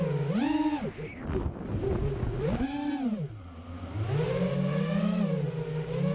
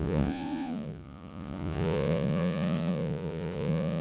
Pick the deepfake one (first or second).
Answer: second